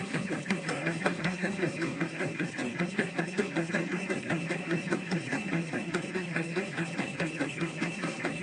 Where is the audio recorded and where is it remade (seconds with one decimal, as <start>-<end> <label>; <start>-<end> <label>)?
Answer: 0.0-8.4 remade